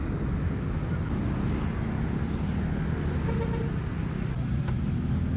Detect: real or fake real